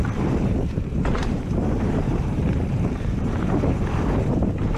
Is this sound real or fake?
fake